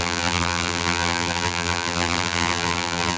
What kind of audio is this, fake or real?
fake